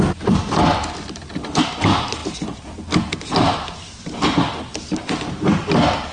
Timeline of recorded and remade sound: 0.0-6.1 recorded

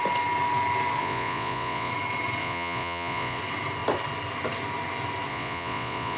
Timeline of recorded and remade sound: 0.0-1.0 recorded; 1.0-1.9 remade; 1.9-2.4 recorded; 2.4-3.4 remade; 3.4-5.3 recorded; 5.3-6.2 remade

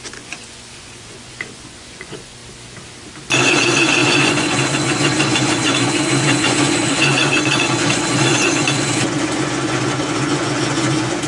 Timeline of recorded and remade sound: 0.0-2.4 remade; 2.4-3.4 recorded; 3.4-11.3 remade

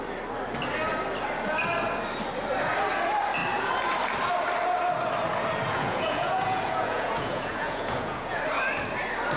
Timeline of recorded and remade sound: 0.0-5.7 recorded; 5.7-8.4 remade; 8.4-9.4 recorded